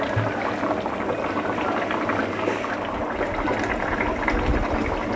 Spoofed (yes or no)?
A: no